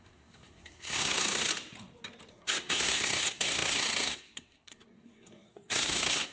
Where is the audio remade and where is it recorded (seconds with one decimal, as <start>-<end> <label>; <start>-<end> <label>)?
0.0-1.5 remade; 1.5-2.3 recorded; 2.3-6.3 remade